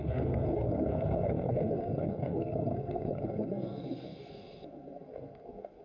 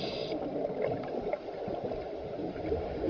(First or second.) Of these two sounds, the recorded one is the second